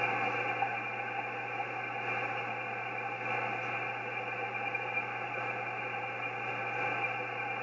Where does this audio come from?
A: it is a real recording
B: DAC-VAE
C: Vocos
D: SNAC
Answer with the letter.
A